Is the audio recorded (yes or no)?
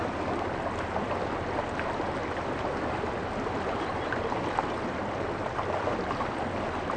yes